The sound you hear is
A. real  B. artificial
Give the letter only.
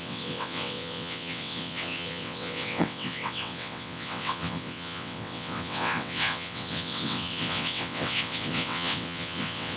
B